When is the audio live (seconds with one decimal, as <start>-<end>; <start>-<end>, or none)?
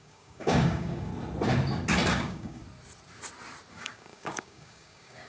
1.1-2.1; 2.6-3.7